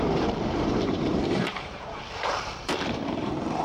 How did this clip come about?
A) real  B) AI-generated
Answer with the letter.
B